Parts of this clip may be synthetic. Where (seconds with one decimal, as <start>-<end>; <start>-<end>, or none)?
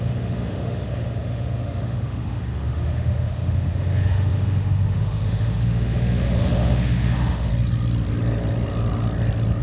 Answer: 0.0-7.5